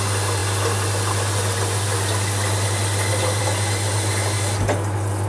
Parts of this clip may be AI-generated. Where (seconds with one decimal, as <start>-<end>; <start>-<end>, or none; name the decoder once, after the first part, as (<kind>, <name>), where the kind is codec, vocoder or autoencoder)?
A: none